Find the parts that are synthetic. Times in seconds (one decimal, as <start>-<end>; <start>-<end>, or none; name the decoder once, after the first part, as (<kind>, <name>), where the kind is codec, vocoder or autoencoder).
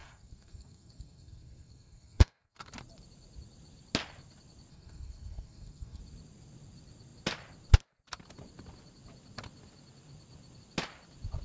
0.0-2.7 (codec, SNAC); 4.7-6.0